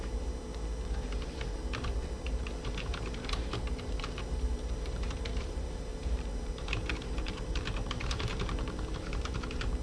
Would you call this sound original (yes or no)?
no